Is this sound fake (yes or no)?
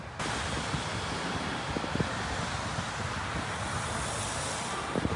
no